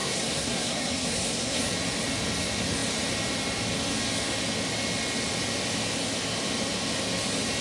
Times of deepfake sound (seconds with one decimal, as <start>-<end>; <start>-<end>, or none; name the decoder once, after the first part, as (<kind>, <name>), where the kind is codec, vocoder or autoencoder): 0.0-1.6 (codec, SNAC)